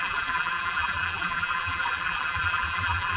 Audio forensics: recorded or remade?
remade